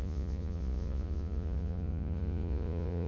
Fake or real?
fake